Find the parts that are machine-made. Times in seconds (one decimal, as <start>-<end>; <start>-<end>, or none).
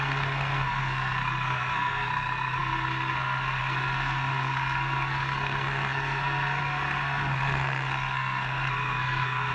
0.0-9.5